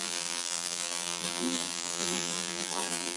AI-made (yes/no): yes